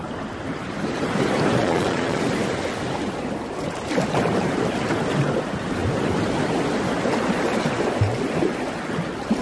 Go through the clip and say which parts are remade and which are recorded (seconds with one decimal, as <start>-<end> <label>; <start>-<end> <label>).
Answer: 0.0-1.6 recorded; 1.6-2.2 remade; 2.2-9.4 recorded